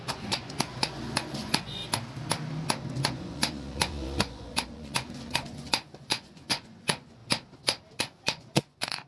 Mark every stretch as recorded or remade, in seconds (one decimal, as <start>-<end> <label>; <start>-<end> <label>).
0.0-1.8 remade; 1.8-3.0 recorded; 3.0-7.2 remade; 7.2-8.0 recorded; 8.0-9.1 remade